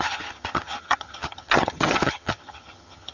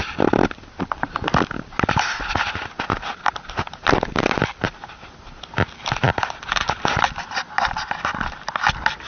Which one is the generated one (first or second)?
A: first